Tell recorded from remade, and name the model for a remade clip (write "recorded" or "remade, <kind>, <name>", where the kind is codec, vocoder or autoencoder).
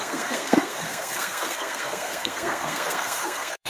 remade, codec, SNAC